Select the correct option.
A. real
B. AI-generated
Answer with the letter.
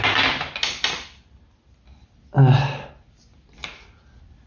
A